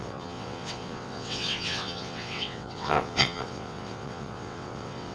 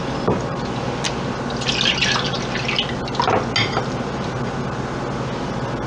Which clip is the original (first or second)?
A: second